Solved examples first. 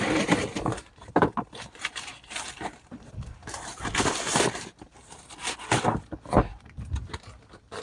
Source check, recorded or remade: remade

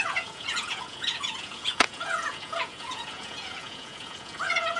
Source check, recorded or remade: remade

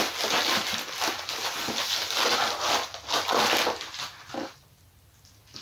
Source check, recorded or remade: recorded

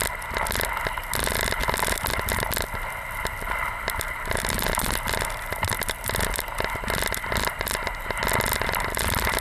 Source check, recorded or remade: recorded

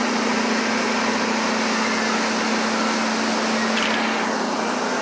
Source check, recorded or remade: recorded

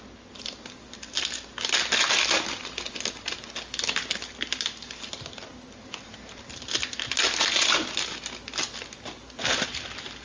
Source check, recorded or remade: recorded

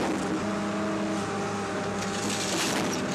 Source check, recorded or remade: recorded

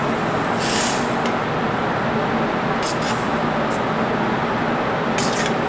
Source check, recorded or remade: recorded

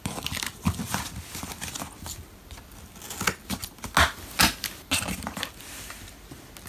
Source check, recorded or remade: recorded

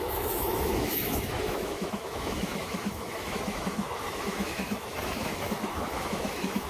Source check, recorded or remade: remade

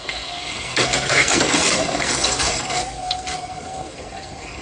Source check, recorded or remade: remade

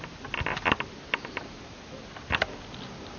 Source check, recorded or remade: recorded